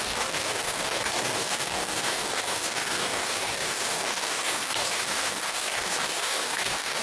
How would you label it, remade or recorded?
remade